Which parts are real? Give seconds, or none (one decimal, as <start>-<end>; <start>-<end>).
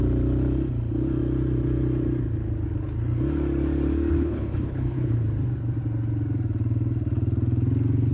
0.0-4.1; 5.1-8.1